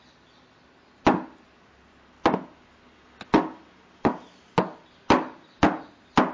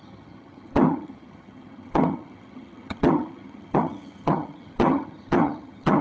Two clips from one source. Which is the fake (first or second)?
second